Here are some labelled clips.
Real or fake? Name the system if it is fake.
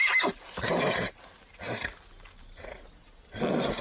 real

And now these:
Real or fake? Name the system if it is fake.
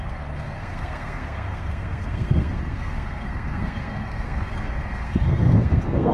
fake, codec, SNAC